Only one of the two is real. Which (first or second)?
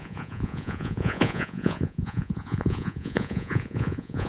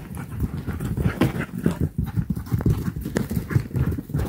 second